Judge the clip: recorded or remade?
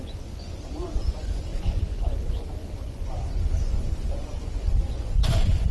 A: remade